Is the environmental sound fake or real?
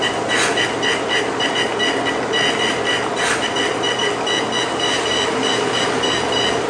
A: real